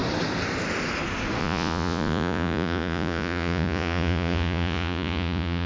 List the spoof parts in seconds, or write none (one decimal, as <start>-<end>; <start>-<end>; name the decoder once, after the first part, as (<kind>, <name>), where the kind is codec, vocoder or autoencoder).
1.4-5.7 (vocoder, Vocos)